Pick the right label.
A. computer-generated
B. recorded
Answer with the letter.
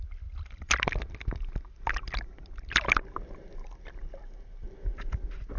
B